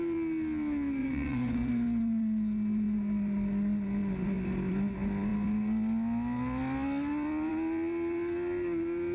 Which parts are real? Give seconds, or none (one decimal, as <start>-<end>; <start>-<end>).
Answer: 0.0-1.0; 1.7-9.1